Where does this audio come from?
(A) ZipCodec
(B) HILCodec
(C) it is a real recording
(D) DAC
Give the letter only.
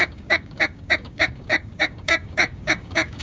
D